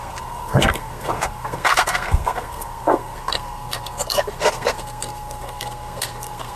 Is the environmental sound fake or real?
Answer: fake